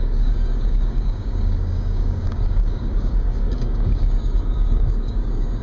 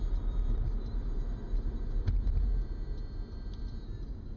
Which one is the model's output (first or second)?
first